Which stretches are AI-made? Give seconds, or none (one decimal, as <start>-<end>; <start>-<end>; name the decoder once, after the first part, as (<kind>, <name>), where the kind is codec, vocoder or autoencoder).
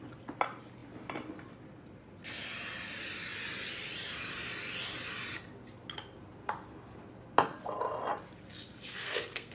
8.9-9.5 (codec, SNAC)